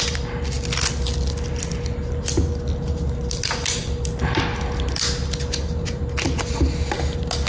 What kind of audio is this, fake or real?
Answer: real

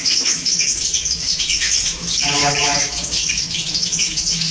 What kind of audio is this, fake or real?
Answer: fake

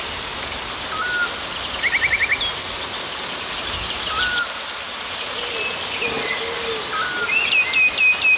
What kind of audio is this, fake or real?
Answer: real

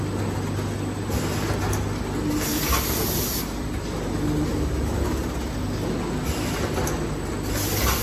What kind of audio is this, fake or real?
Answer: real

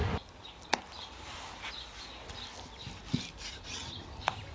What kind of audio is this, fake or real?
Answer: real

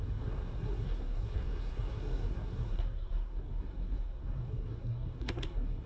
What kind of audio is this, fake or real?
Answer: fake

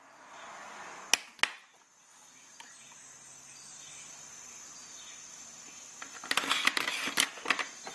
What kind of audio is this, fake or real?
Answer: real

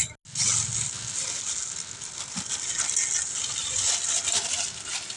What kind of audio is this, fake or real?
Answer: real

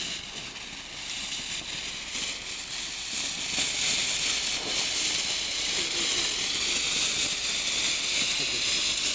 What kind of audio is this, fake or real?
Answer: real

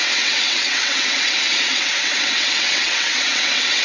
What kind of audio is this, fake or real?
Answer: fake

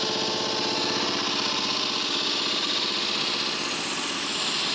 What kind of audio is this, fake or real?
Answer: real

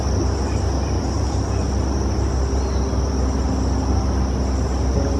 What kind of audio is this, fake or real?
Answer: real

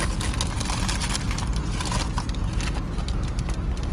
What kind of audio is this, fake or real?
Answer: real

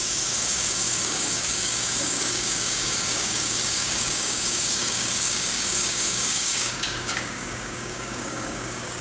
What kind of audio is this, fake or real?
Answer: fake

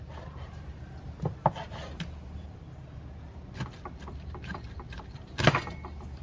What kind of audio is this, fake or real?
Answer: real